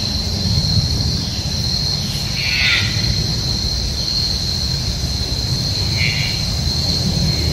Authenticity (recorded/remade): recorded